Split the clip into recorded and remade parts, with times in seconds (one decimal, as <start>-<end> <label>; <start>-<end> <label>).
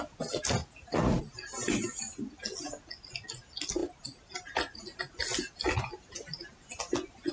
0.0-0.6 recorded; 0.6-1.2 remade; 1.2-7.3 recorded